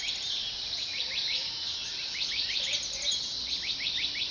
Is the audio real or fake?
real